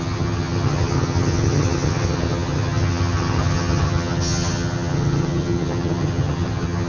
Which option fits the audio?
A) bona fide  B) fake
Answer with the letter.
B